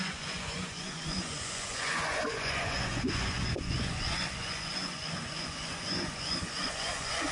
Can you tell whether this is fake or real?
fake